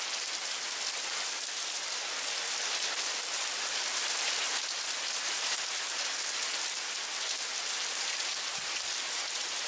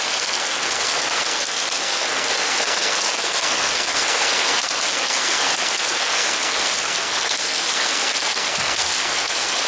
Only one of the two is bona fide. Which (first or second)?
first